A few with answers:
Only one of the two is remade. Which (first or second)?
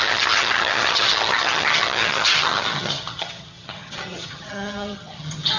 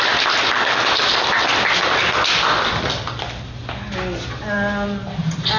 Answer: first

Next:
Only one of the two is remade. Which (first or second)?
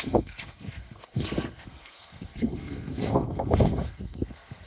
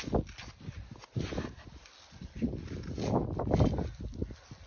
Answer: first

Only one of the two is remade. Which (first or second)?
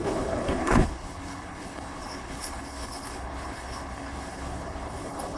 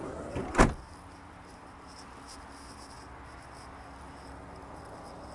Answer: first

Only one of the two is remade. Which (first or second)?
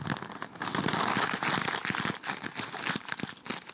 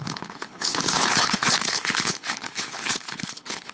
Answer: second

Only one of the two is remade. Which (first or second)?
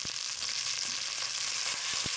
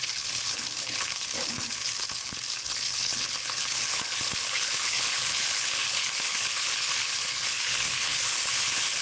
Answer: second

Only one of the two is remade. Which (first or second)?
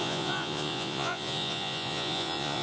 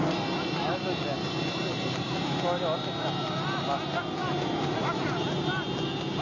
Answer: first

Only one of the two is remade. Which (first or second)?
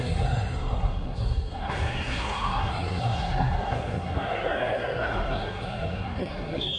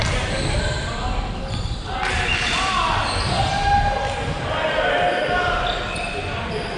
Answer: first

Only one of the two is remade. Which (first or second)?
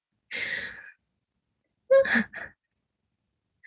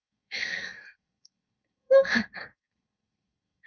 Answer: second